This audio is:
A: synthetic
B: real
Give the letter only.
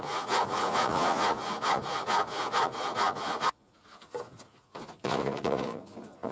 A